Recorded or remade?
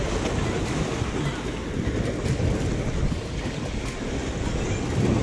recorded